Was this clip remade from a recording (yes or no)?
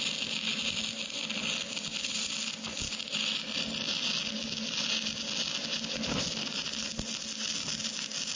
no